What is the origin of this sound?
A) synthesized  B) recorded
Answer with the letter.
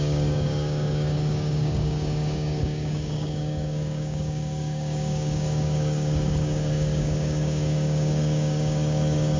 A